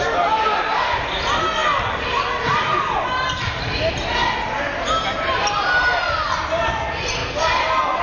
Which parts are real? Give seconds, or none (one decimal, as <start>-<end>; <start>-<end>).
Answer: 0.0-8.0